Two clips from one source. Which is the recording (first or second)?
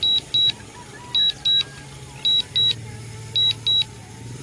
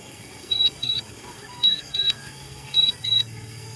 first